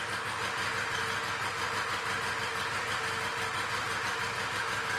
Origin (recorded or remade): recorded